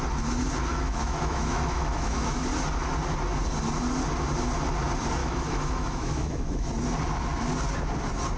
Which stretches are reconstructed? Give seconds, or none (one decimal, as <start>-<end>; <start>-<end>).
0.7-2.4; 5.2-6.7